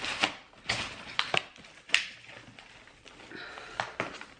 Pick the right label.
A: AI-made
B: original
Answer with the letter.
B